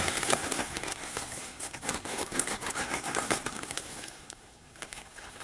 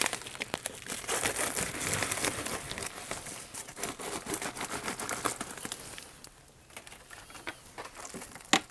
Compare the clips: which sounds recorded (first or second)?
second